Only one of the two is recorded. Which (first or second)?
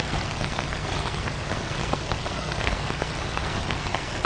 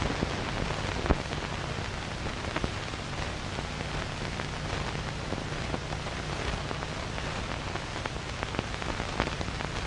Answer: second